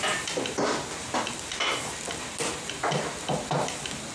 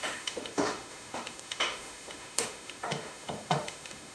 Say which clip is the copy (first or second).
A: second